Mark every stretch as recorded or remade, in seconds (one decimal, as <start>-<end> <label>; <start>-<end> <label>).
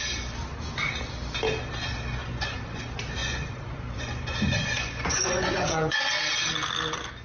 0.0-2.2 recorded; 2.2-2.8 remade; 2.8-3.2 recorded; 3.2-6.1 remade; 6.1-7.2 recorded